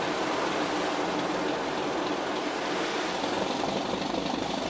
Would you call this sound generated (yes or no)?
no